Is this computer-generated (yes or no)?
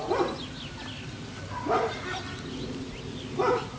no